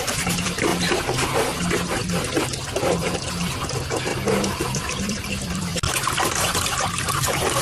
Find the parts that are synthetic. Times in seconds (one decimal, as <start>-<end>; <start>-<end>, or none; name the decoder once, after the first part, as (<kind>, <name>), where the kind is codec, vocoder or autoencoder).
0.0-0.7 (vocoder, BigVGAN v2); 3.3-4.1; 4.6-5.7; 7.1-7.6